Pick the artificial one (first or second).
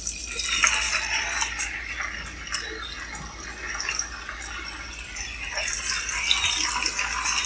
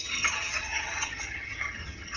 second